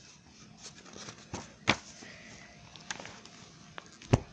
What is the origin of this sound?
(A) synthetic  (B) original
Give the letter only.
B